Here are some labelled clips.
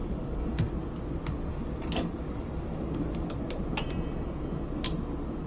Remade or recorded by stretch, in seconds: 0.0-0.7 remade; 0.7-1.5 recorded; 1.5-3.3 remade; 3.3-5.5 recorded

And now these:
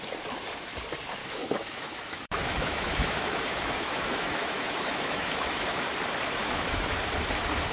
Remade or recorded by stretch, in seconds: 0.0-1.2 recorded; 1.2-5.8 remade; 5.8-6.4 recorded; 6.4-7.0 remade; 7.0-7.7 recorded

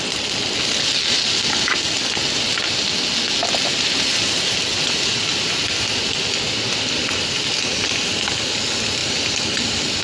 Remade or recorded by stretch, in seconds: 0.0-10.0 recorded

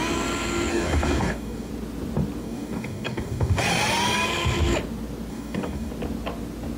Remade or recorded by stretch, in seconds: 0.0-0.7 recorded; 0.7-1.7 remade; 1.7-2.4 recorded; 2.4-3.6 remade; 3.6-5.3 recorded; 5.3-5.9 remade; 5.9-6.8 recorded

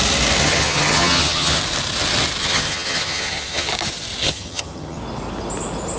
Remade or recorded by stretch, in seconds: 0.0-0.4 recorded; 0.4-1.6 remade; 1.6-2.4 recorded; 2.4-3.7 remade; 3.7-4.2 recorded; 4.2-5.0 remade; 5.0-6.0 recorded

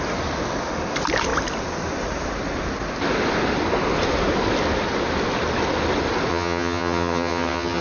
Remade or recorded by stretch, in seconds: 0.0-6.3 recorded; 6.3-7.8 remade

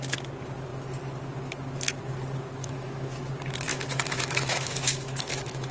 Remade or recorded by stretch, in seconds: 0.0-2.6 recorded; 2.6-3.3 remade; 3.3-3.7 recorded; 3.7-5.7 remade

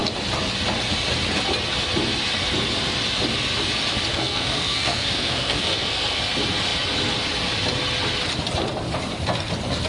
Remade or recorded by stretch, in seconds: 0.0-4.1 recorded; 4.1-6.2 remade; 6.2-9.9 recorded